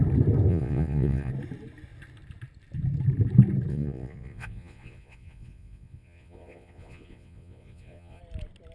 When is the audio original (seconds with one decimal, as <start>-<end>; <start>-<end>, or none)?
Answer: 0.0-0.5; 1.3-3.7; 8.2-8.7